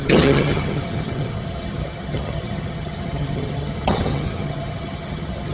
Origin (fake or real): fake